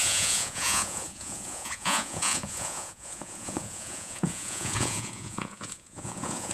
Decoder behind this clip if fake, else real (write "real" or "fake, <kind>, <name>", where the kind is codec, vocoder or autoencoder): fake, vocoder, Vocos